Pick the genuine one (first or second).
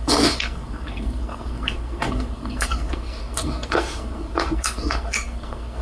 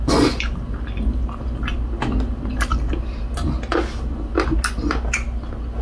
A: second